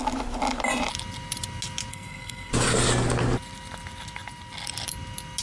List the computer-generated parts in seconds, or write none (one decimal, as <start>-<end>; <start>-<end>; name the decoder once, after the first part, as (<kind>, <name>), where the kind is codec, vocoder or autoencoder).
1.9-2.5 (codec, SNAC)